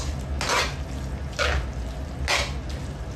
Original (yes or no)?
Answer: yes